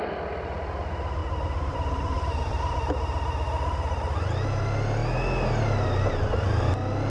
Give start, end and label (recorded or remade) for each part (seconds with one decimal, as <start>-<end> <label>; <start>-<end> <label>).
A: 0.0-1.2 recorded; 1.2-2.6 remade; 2.6-7.1 recorded